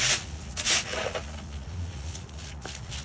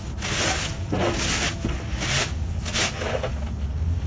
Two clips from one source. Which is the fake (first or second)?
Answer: first